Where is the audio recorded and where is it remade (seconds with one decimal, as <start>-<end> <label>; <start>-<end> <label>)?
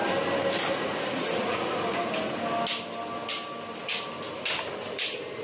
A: 0.0-0.7 recorded; 0.7-1.7 remade; 1.7-4.9 recorded; 4.9-5.4 remade